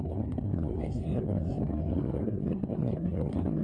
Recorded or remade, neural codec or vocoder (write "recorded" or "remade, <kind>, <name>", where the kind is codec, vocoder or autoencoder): remade, codec, SNAC